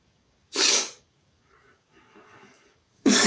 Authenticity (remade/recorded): remade